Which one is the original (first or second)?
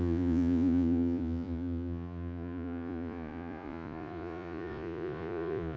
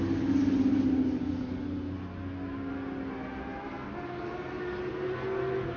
second